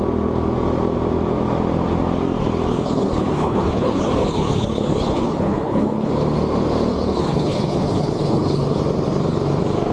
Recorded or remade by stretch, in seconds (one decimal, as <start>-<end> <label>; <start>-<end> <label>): 0.0-2.7 recorded; 2.7-6.1 remade; 6.1-6.9 recorded; 6.9-8.8 remade; 8.8-9.9 recorded